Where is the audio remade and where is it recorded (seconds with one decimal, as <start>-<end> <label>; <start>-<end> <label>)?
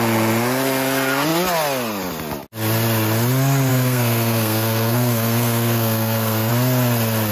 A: 0.0-3.7 recorded; 3.7-6.5 remade; 6.5-7.3 recorded